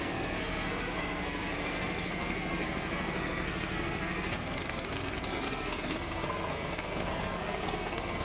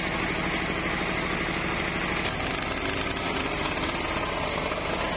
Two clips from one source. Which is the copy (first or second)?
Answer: first